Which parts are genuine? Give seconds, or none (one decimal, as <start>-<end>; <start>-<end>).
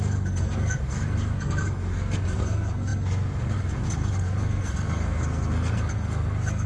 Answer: none